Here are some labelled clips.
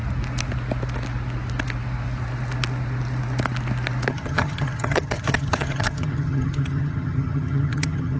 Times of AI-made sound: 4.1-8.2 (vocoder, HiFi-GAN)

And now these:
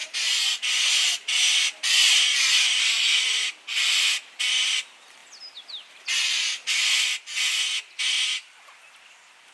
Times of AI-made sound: none

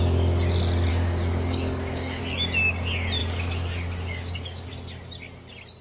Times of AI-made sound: 0.9-2.2 (codec, DAC); 3.2-4.7

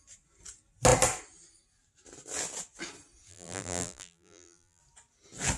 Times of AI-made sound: 3.3-4.8 (vocoder, BigVGAN v2)

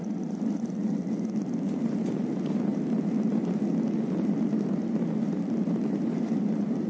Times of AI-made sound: none

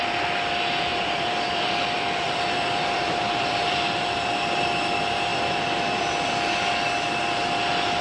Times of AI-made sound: 0.9-4.6 (vocoder, BigVGAN v2); 5.3-6.0

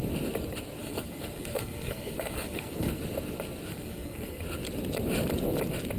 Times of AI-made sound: 0.8-3.0 (codec, SNAC); 3.7-4.4